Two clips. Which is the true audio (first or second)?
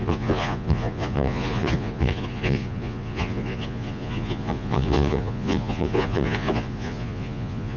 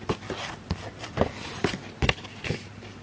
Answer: second